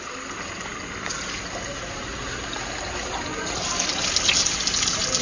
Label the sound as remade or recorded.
recorded